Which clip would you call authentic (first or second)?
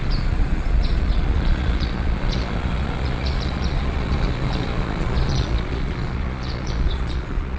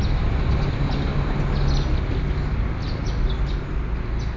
second